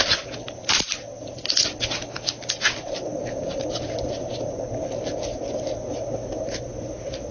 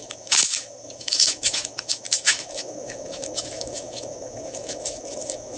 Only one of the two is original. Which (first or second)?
first